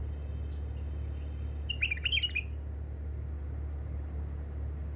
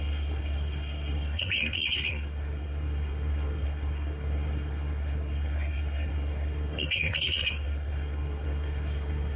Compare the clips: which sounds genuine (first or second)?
first